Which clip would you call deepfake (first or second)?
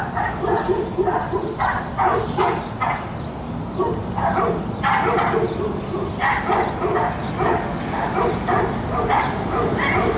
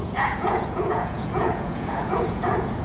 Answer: second